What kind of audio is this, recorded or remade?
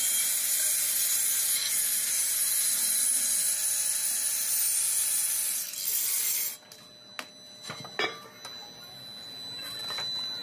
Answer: recorded